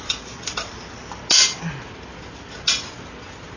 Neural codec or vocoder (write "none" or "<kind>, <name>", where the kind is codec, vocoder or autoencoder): none